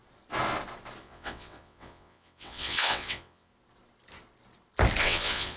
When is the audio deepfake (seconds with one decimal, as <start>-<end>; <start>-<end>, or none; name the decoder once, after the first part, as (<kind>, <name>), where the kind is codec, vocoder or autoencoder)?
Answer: 1.0-3.5 (vocoder, WaveNeXt); 5.0-5.6